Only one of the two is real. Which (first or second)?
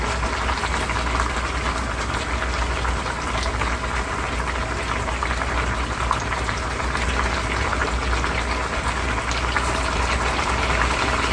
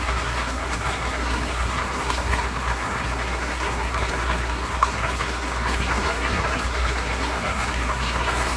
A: first